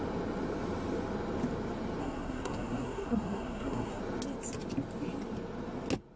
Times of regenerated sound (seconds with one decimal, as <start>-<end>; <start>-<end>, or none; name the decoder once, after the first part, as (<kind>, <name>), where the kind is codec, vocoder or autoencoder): 2.0-4.0 (codec, SNAC)